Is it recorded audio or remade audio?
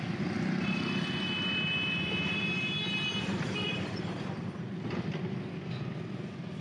recorded